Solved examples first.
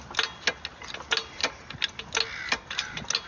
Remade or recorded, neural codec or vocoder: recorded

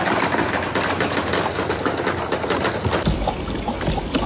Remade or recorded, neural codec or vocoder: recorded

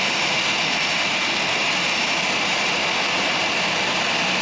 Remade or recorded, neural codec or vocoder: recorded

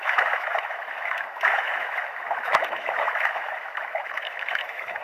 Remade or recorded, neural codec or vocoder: remade, autoencoder, DAC-VAE